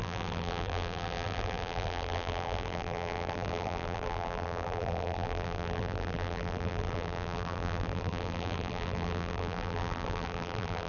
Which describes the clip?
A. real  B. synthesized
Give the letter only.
B